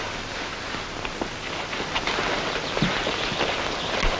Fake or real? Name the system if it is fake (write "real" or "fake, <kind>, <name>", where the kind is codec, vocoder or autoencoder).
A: real